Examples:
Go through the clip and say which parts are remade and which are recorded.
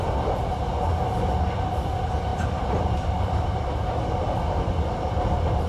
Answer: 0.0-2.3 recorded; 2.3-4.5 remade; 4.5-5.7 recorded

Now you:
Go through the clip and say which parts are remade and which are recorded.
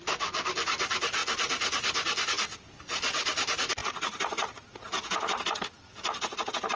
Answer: 0.0-1.2 remade; 1.2-2.8 recorded; 2.8-3.8 remade; 3.8-6.8 recorded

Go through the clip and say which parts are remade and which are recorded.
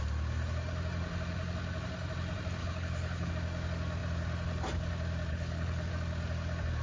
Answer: 0.0-2.6 recorded; 2.6-3.3 remade; 3.3-5.3 recorded; 5.3-5.9 remade; 5.9-6.8 recorded